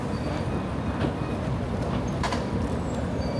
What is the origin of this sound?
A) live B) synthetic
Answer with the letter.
A